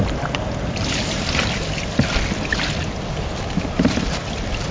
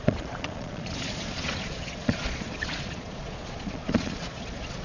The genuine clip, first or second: first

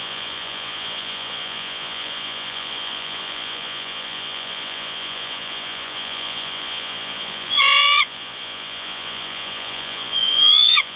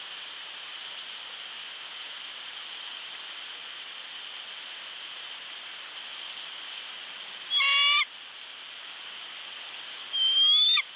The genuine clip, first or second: second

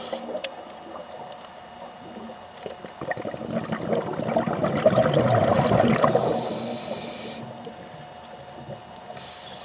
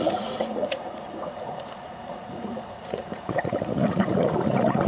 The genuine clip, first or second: first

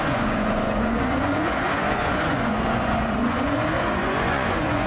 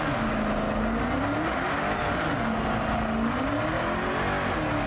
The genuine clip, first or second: second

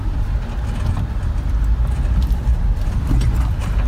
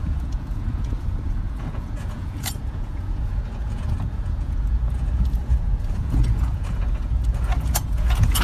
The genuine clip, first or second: first